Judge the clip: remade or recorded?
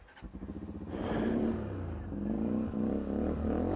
recorded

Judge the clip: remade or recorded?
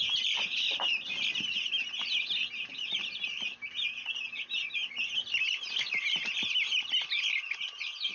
recorded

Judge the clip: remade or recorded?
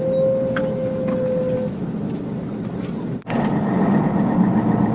recorded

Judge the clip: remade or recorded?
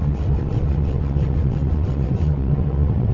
remade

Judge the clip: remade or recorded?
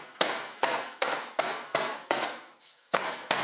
remade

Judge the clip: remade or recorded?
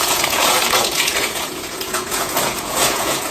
remade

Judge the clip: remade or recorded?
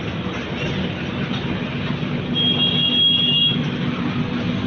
recorded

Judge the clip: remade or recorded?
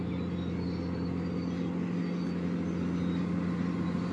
recorded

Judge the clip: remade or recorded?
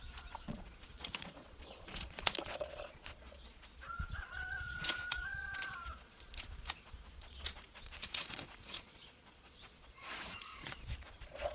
remade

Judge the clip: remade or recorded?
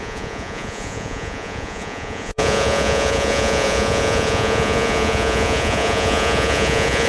remade